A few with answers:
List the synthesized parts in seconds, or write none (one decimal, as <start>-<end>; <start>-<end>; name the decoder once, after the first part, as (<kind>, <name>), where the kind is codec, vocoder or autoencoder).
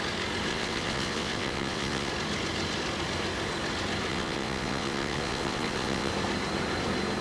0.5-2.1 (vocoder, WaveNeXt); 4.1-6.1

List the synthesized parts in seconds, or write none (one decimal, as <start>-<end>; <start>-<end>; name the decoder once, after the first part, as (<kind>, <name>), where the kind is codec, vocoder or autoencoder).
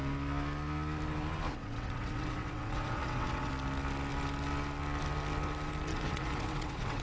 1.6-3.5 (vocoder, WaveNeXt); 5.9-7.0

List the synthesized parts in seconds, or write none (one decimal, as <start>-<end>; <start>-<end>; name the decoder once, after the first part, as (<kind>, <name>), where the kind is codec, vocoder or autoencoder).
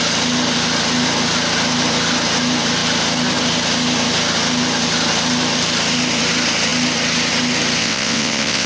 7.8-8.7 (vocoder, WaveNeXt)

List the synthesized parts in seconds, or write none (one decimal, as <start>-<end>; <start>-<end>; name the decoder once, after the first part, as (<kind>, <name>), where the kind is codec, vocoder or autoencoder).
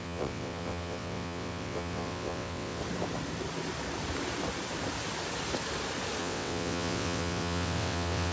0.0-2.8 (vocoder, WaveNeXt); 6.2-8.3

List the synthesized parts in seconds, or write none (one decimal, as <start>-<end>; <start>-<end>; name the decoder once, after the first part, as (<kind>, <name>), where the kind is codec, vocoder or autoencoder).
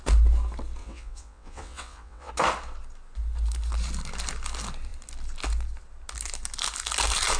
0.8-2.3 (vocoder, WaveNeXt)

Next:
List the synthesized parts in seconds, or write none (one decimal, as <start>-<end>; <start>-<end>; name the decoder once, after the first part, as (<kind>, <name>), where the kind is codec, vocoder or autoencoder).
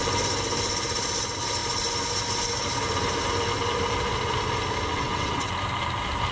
4.9-5.5 (vocoder, WaveNeXt)